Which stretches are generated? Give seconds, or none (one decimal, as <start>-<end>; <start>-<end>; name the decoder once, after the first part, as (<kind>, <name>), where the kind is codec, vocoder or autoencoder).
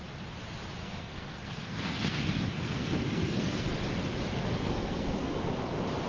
0.8-3.7 (codec, SNAC); 4.3-5.5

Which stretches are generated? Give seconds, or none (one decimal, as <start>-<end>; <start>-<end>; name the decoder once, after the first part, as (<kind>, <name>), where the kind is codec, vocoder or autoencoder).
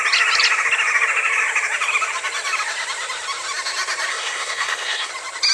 4.1-5.1 (codec, SNAC)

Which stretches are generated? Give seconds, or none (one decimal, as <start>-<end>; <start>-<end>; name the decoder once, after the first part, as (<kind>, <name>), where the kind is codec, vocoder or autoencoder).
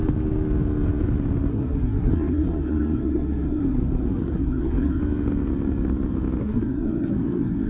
1.5-5.0 (codec, SNAC); 6.4-7.7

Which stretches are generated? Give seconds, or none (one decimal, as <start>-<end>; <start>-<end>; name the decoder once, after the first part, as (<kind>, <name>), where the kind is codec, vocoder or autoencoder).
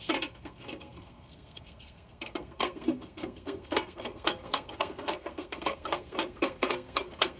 0.0-7.4 (codec, SNAC)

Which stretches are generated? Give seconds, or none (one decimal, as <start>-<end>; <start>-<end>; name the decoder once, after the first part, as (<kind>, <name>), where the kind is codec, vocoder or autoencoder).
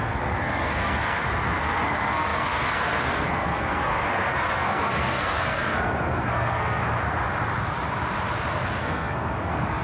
0.0-6.8 (codec, SNAC); 8.8-9.8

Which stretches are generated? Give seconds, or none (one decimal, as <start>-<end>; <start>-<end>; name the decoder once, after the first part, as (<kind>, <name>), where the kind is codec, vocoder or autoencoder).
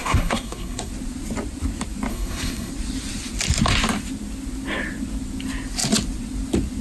0.0-0.9 (codec, SNAC); 2.1-2.7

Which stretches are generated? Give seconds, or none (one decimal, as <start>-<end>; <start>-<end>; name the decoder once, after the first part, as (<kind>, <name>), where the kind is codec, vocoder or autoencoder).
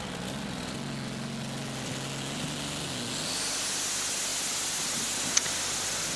none